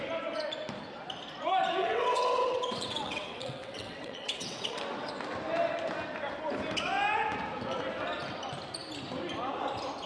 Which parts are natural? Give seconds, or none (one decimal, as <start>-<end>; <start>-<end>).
0.0-1.8; 4.8-10.1